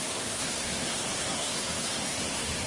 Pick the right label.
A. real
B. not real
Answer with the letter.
B